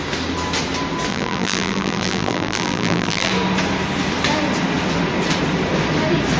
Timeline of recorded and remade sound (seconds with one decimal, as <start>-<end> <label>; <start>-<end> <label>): 0.0-1.1 recorded; 1.1-3.3 remade; 3.3-6.4 recorded